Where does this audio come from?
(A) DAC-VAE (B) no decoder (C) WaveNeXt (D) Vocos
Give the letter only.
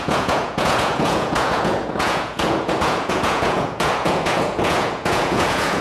D